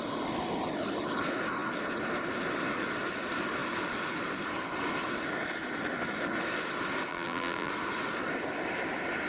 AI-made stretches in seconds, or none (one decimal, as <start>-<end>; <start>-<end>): 7.1-7.7